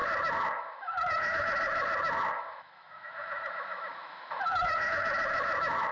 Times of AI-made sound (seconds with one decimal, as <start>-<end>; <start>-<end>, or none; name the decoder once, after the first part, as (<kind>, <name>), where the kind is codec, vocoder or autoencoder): 0.0-5.9 (autoencoder, DAC-VAE)